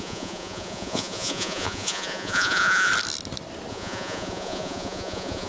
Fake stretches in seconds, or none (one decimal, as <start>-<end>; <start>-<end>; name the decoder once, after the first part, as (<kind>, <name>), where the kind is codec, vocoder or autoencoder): 0.0-2.9 (vocoder, Vocos); 3.7-5.5